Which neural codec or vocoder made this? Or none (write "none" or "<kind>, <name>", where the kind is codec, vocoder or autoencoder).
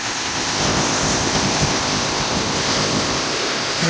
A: codec, ZipCodec